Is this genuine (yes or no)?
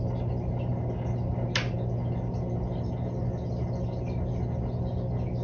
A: yes